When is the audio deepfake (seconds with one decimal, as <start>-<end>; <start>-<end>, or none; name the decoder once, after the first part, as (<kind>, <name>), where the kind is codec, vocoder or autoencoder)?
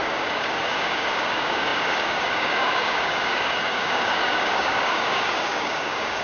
0.0-6.2 (codec, DAC)